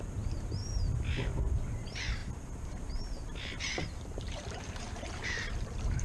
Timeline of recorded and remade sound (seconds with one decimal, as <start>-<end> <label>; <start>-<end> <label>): 0.0-6.0 remade